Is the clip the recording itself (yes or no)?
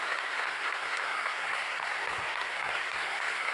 no